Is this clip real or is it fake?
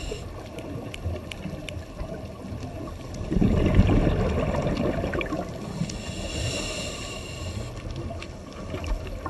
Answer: real